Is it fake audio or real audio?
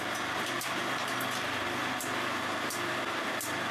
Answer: real